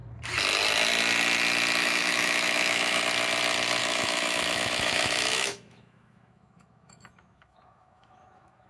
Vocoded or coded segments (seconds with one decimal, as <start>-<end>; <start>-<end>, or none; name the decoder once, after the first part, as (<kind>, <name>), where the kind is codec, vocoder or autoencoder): 1.8-3.0 (autoencoder, DAC-VAE); 3.8-8.7